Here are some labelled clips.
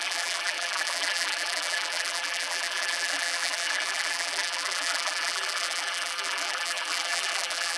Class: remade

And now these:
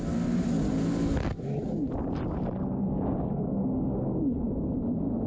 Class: recorded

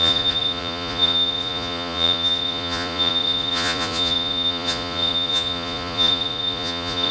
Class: remade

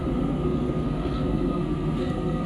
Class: remade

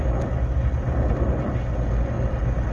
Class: recorded